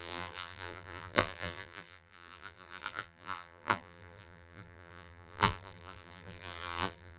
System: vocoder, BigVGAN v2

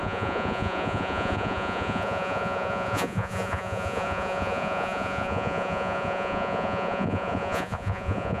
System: vocoder, Vocos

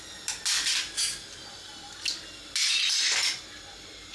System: none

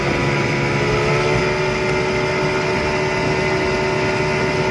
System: none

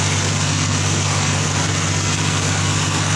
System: codec, SNAC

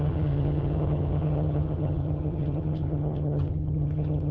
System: vocoder, HiFi-GAN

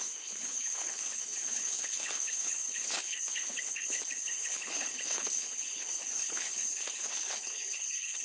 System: codec, HILCodec